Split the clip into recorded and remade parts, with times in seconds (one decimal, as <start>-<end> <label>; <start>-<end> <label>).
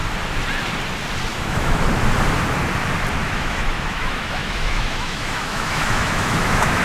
0.0-1.3 recorded; 1.3-1.9 remade; 1.9-3.2 recorded; 3.2-6.8 remade